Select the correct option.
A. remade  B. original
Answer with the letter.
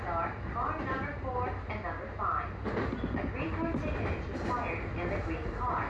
B